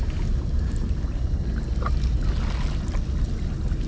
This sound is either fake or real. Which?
real